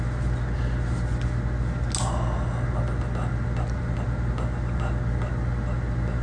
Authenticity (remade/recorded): recorded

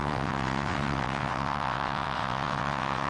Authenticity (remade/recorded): remade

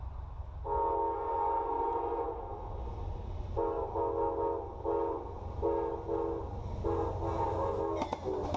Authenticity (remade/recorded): recorded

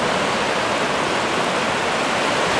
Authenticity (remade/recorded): recorded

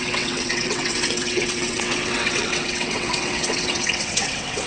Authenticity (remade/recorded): remade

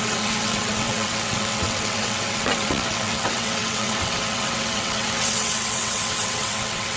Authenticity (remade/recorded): remade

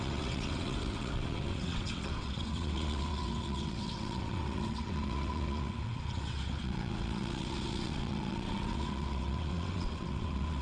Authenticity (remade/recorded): remade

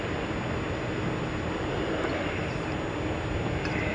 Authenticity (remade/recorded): recorded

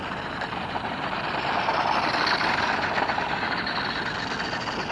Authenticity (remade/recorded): recorded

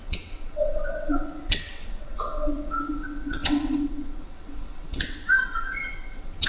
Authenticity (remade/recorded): remade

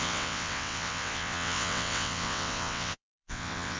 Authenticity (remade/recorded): remade